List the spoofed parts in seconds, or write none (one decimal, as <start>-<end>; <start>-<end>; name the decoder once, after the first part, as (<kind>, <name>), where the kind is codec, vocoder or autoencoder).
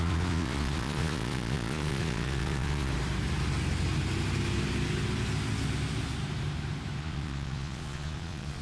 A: 0.0-2.9 (vocoder, Vocos); 7.0-8.6